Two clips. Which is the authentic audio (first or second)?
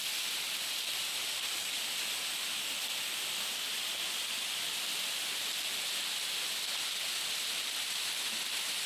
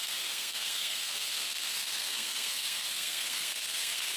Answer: first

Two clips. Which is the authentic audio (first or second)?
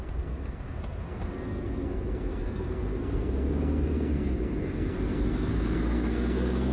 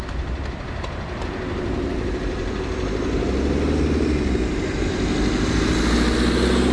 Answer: second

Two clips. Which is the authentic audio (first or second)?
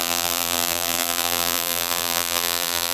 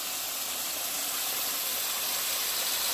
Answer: second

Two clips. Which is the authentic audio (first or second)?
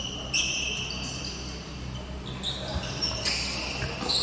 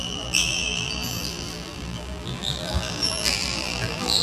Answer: first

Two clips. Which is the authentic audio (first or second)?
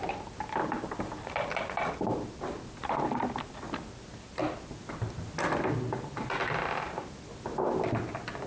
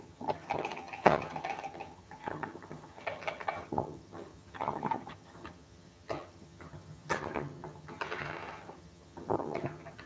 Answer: first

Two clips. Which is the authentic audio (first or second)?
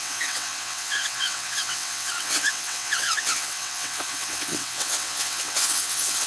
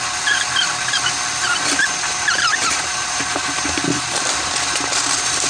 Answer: second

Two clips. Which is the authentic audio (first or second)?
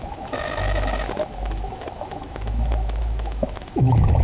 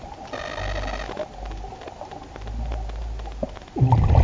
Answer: second